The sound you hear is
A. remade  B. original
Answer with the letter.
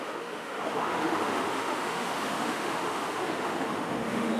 A